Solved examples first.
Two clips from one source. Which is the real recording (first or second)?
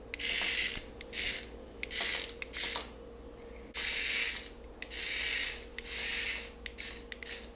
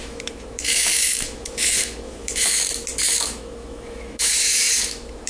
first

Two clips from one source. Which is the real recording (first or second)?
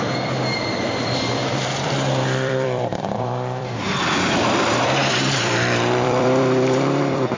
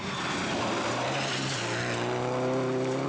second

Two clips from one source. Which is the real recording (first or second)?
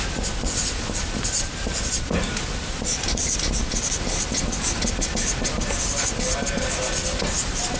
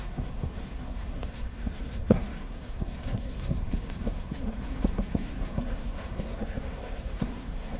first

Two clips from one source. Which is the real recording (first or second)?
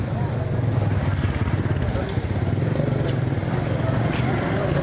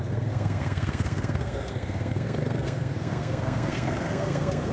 first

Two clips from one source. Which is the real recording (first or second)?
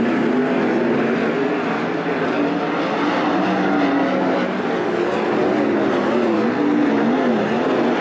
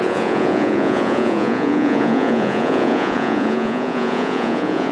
first